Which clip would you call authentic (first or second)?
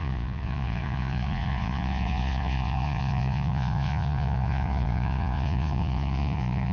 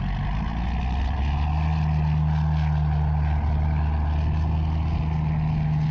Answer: second